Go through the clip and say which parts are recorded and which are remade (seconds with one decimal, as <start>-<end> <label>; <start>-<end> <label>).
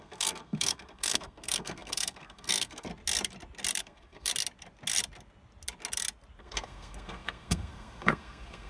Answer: 0.0-2.9 remade; 2.9-3.8 recorded; 3.8-4.3 remade; 4.3-6.4 recorded; 6.4-8.7 remade